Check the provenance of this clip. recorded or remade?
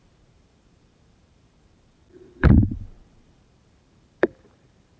remade